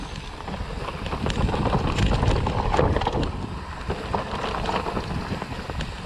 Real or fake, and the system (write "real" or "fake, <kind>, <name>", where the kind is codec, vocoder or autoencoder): real